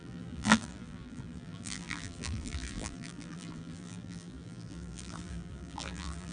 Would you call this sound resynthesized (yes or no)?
yes